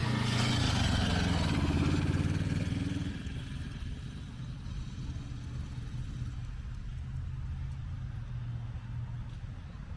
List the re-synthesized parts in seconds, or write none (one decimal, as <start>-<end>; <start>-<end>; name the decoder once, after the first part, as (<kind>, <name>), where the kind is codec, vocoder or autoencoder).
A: 0.0-0.6 (vocoder, Vocos)